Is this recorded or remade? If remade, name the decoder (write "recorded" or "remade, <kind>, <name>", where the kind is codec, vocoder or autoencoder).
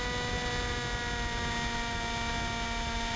recorded